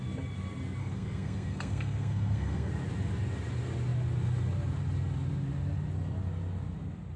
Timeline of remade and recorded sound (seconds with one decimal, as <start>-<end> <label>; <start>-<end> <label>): 0.0-0.8 recorded; 0.8-2.7 remade; 2.7-7.2 recorded